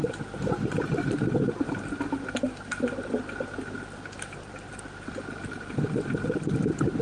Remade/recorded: remade